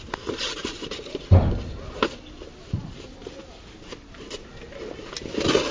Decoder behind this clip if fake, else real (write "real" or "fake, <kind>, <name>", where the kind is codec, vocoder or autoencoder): real